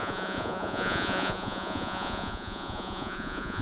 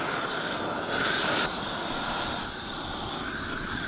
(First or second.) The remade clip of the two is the first